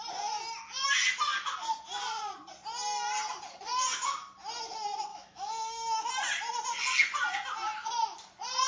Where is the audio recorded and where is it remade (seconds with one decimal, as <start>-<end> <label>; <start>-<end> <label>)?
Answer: 0.0-5.1 recorded; 5.1-6.1 remade; 6.1-8.7 recorded

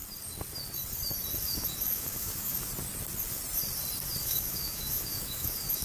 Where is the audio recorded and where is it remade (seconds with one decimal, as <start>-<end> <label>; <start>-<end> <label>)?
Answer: 0.0-1.4 recorded; 1.4-2.7 remade; 2.7-4.2 recorded; 4.2-5.8 remade

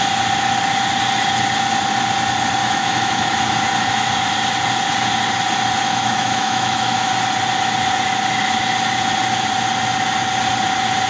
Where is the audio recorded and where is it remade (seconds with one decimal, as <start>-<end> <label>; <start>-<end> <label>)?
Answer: 0.0-2.6 recorded; 2.6-3.4 remade; 3.4-5.9 recorded; 5.9-7.1 remade; 7.1-11.1 recorded

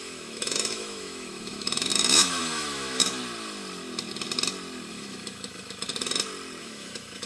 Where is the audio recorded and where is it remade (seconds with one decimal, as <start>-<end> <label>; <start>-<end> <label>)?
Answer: 0.0-3.2 remade; 3.2-4.9 recorded; 4.9-5.9 remade; 5.9-6.6 recorded; 6.6-7.3 remade

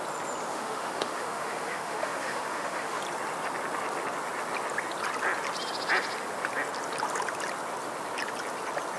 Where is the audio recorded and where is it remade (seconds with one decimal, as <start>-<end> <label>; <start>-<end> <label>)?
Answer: 0.0-0.5 recorded; 0.5-3.0 remade; 3.0-9.0 recorded